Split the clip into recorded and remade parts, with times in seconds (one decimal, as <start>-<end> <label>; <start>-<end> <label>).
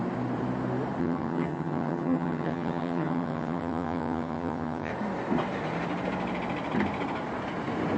0.0-1.0 recorded; 1.0-4.9 remade; 4.9-8.0 recorded